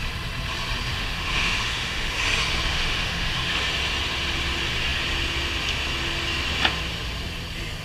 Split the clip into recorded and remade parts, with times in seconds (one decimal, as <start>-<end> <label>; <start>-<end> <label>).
0.0-0.9 recorded; 0.9-2.2 remade; 2.2-2.7 recorded; 2.7-3.5 remade; 3.5-7.8 recorded